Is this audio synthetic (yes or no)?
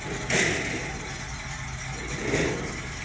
no